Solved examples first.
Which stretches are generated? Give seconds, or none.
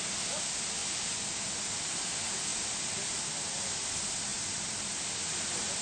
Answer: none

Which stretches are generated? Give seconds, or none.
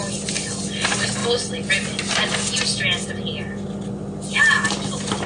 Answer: none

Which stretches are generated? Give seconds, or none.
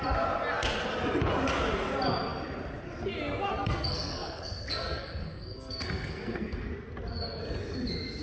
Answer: 3.5-6.7 (codec, SNAC)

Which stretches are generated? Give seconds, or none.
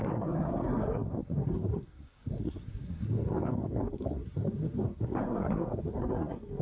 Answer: 0.0-6.6 (codec, SNAC)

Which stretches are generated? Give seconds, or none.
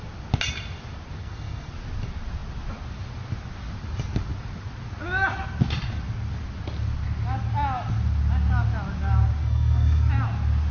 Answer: 1.2-1.7 (codec, SNAC); 9.4-10.1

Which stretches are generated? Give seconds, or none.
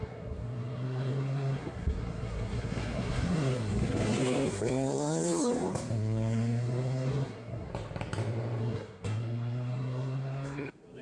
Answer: 0.0-7.7 (codec, SNAC); 8.6-11.0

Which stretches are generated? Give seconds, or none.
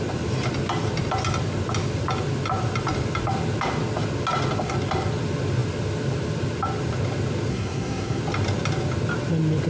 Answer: 7.5-8.2 (codec, SNAC)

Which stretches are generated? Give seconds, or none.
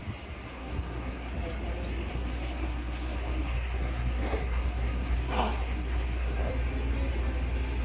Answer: 0.5-1.3 (codec, SNAC); 2.1-6.5